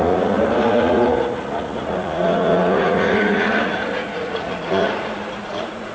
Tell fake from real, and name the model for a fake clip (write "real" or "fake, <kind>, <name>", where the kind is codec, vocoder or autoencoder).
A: fake, vocoder, Vocos